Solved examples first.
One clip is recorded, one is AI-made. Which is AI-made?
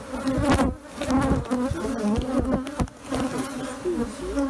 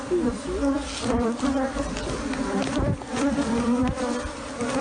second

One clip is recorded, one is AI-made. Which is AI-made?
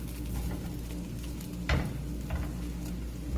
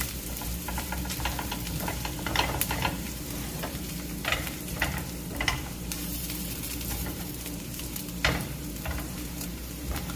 second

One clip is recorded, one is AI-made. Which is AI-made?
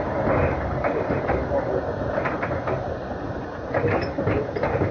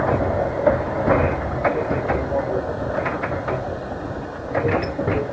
first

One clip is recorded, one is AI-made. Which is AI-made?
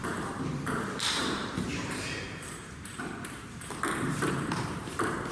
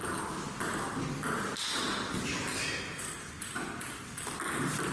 first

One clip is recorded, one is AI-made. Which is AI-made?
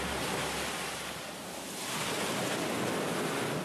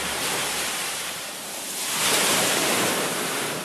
second